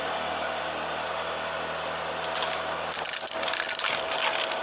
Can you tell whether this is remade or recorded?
recorded